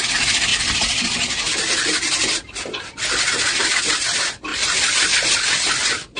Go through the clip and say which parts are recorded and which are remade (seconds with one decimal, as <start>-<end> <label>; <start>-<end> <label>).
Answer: 0.0-0.5 recorded; 0.5-3.2 remade; 3.2-4.5 recorded; 4.5-5.1 remade; 5.1-6.2 recorded